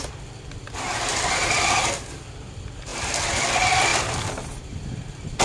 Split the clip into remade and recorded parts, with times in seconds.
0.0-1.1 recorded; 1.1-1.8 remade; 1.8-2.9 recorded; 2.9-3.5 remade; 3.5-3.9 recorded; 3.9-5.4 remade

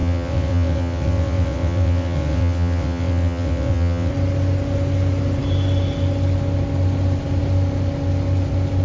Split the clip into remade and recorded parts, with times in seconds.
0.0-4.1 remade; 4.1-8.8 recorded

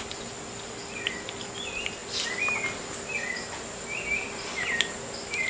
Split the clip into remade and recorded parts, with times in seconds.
0.0-5.5 recorded

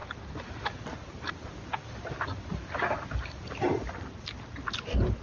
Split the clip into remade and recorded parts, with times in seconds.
0.0-5.2 recorded

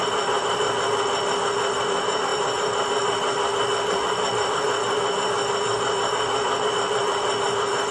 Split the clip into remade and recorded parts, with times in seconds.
0.0-7.9 recorded